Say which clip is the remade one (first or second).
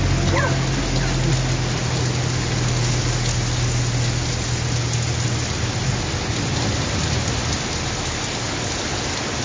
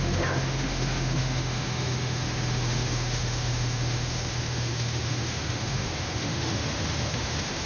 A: second